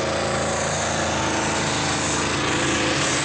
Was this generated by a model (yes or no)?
no